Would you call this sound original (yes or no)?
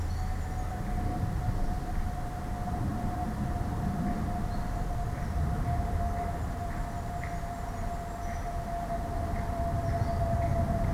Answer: yes